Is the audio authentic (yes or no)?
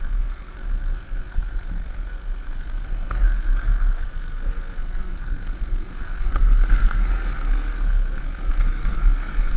no